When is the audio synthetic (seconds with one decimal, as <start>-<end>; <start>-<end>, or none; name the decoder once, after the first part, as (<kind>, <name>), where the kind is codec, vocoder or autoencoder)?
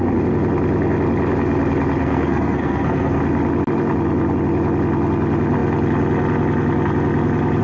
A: 2.0-3.2 (codec, SNAC)